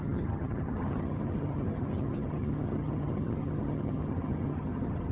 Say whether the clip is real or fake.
fake